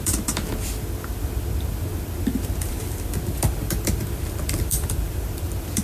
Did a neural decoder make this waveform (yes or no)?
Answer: yes